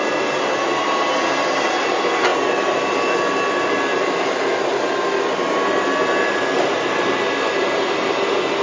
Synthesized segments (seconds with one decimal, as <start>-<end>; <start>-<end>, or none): none